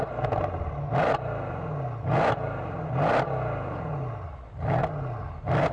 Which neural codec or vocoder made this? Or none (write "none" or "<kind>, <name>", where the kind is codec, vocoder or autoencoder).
none